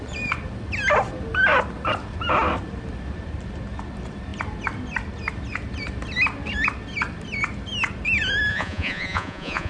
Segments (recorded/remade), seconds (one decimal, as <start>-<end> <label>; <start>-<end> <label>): 0.0-8.5 recorded; 8.5-9.7 remade